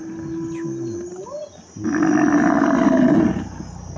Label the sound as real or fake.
real